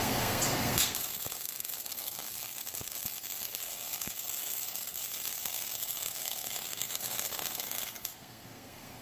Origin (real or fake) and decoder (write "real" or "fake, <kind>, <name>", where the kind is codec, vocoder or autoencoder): fake, codec, SNAC